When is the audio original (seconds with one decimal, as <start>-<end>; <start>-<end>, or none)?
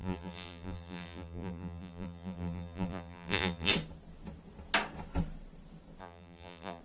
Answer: 3.7-6.0